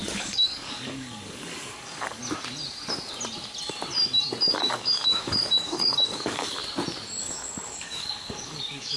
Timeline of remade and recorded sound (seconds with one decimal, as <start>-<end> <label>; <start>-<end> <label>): 0.0-2.2 remade; 2.2-4.5 recorded; 4.5-6.6 remade; 6.6-7.2 recorded; 7.2-9.0 remade